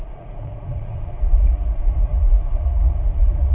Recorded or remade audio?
remade